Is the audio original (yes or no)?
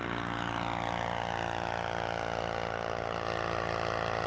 yes